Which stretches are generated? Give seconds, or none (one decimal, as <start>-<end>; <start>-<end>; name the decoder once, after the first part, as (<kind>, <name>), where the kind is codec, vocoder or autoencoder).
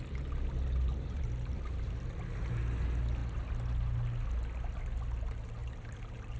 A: 0.9-1.9 (vocoder, BigVGAN v2); 5.6-6.4